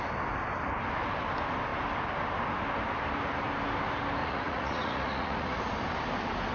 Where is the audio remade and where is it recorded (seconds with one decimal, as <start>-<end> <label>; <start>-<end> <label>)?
0.0-4.2 recorded; 4.2-5.6 remade; 5.6-6.5 recorded